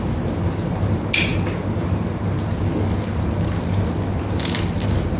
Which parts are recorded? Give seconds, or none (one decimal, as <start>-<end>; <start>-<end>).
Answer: 0.0-5.2